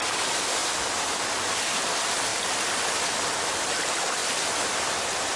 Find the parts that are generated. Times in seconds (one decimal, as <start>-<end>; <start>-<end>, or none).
none